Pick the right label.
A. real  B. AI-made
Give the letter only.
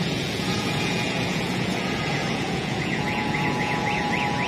B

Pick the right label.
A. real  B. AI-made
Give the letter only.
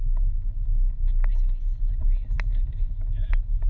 A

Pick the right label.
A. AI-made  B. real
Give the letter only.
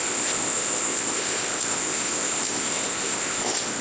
A